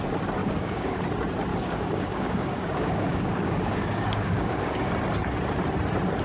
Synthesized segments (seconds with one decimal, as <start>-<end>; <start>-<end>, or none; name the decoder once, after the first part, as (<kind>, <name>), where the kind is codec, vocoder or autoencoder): 0.4-1.0 (codec, DAC); 1.5-4.9